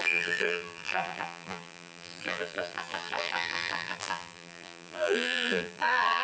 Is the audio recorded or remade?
remade